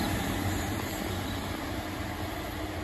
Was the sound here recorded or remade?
recorded